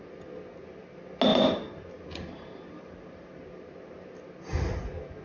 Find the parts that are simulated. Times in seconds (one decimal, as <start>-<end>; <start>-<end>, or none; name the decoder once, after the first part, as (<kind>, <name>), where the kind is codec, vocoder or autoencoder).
1.3-3.4 (vocoder, BigVGAN v2)